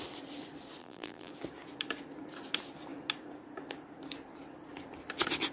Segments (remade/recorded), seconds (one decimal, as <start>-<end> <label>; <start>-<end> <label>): 0.0-0.8 recorded; 0.8-1.3 remade; 1.3-5.5 recorded